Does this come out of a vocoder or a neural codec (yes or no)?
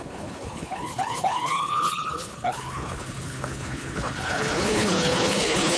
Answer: yes